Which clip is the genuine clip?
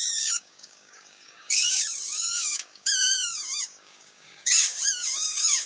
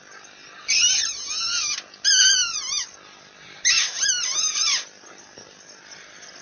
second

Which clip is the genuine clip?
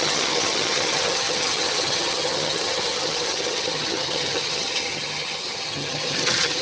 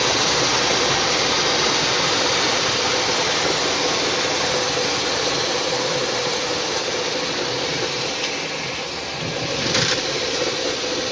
second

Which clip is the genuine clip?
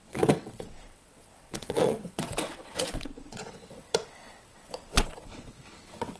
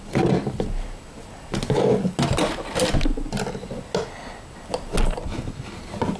second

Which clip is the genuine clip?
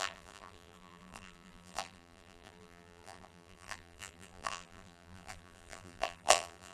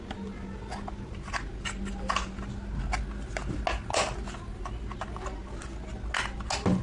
second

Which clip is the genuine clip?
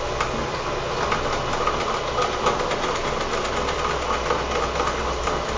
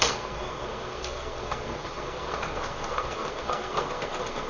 first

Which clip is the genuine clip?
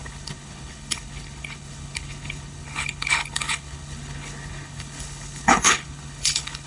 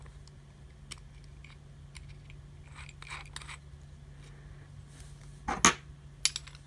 second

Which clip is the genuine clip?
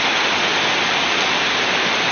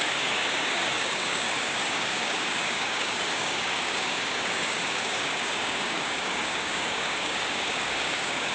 first